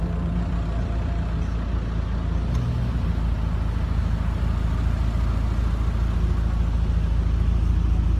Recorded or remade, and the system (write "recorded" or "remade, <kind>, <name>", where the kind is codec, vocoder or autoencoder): recorded